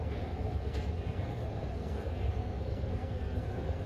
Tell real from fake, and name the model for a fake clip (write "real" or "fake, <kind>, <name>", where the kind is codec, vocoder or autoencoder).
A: fake, codec, SNAC